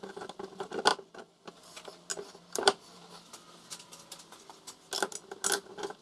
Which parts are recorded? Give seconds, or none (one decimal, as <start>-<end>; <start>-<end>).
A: 0.0-2.1; 3.1-6.0